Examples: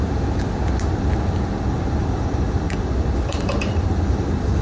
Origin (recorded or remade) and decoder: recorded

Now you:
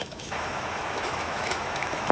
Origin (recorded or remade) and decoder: remade, autoencoder, DAC-VAE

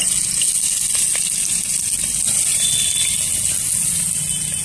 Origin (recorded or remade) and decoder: recorded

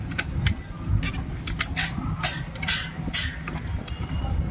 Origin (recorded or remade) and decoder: recorded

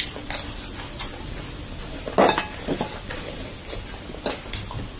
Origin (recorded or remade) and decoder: recorded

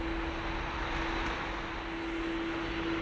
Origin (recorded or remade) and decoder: recorded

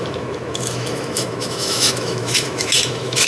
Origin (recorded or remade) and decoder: remade, autoencoder, DAC-VAE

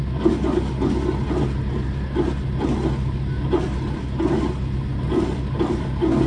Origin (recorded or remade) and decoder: recorded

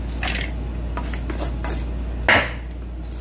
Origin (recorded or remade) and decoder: recorded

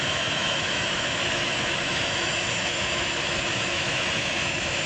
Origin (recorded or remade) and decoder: remade, autoencoder, DAC-VAE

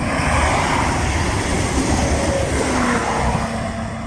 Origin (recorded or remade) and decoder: recorded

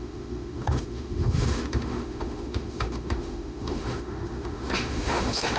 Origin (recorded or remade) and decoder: remade, autoencoder, DAC-VAE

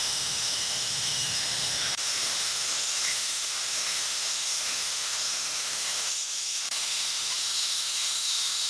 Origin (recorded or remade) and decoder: remade, autoencoder, DAC-VAE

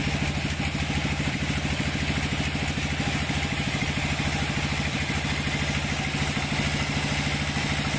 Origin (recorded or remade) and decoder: recorded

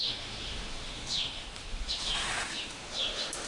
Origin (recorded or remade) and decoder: remade, autoencoder, DAC-VAE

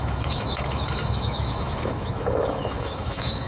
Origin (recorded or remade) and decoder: remade, autoencoder, DAC-VAE